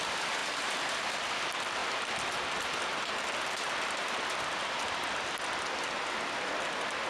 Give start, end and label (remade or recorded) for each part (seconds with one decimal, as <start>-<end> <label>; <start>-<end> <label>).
0.0-7.1 recorded